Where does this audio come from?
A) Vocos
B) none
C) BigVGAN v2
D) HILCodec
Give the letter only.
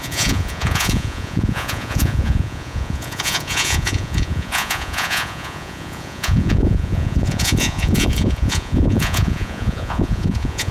A